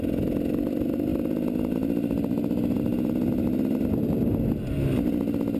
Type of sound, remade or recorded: recorded